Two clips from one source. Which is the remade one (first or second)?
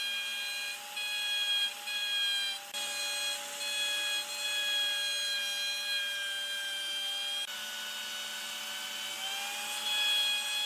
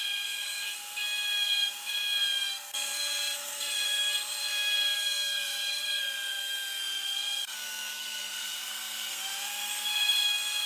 second